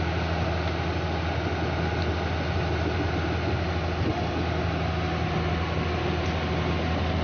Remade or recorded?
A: recorded